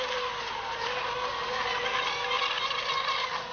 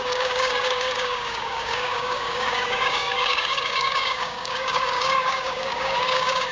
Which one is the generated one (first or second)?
second